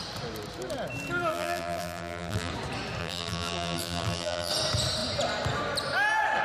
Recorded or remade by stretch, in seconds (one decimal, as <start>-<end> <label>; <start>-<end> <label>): 0.0-1.3 recorded; 1.3-2.5 remade; 2.5-3.0 recorded; 3.0-4.5 remade; 4.5-6.4 recorded